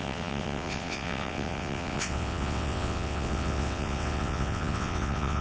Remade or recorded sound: remade